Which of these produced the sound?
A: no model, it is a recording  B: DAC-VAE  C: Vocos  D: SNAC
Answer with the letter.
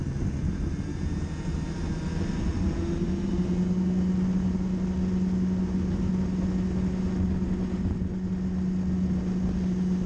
A